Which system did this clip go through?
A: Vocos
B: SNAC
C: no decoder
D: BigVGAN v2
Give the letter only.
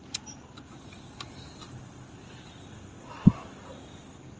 C